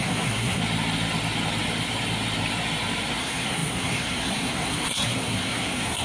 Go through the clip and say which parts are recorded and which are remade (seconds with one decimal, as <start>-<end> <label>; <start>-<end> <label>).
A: 0.0-0.6 remade; 0.6-3.2 recorded; 3.2-6.0 remade